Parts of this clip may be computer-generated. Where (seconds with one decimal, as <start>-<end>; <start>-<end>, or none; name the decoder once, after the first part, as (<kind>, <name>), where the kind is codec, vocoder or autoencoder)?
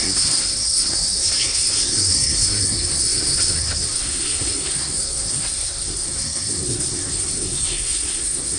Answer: 0.0-8.6 (codec, SNAC)